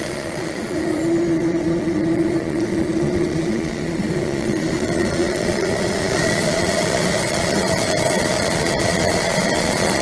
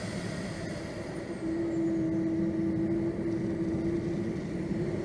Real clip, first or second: second